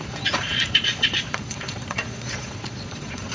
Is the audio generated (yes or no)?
yes